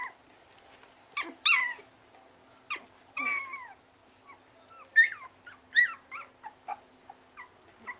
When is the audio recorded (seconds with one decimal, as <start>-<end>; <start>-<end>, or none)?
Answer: 0.0-4.0; 5.5-8.0